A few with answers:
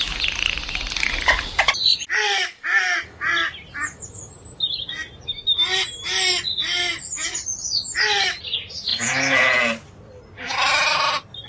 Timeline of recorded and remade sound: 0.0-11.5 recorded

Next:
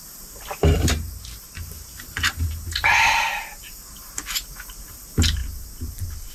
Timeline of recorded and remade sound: 0.0-0.6 recorded; 0.6-4.2 remade; 4.2-5.4 recorded; 5.4-6.3 remade

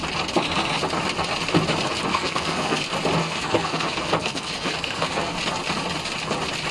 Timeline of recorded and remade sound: 0.0-2.1 recorded; 2.1-2.8 remade; 2.8-3.2 recorded; 3.2-5.4 remade; 5.4-6.7 recorded

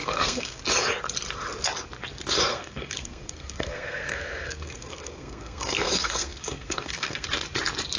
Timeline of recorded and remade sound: 0.0-0.6 remade; 0.6-2.5 recorded; 2.5-7.3 remade; 7.3-8.0 recorded

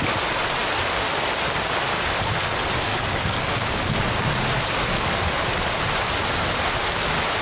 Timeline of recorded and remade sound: 0.0-2.9 recorded; 2.9-3.9 remade; 3.9-7.4 recorded

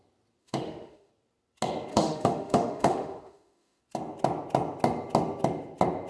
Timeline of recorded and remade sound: 0.0-0.4 recorded; 0.4-1.1 remade; 1.1-1.9 recorded; 1.9-3.8 remade; 3.8-6.1 recorded

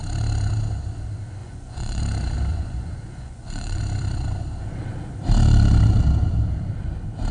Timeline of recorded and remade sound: 0.0-1.4 recorded; 1.4-2.0 remade; 2.0-2.5 recorded; 2.5-3.8 remade; 3.8-7.3 recorded

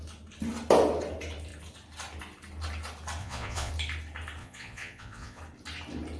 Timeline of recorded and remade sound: 0.0-3.2 recorded; 3.2-3.7 remade; 3.7-4.4 recorded; 4.4-5.4 remade; 5.4-6.2 recorded